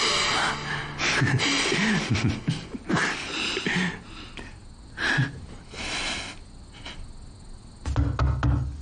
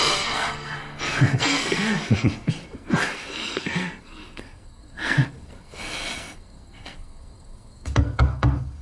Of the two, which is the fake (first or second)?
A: second